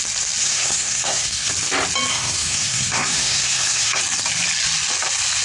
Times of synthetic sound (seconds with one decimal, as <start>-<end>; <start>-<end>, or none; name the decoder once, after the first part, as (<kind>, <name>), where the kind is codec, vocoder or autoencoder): 0.4-1.5 (codec, SNAC); 2.1-4.0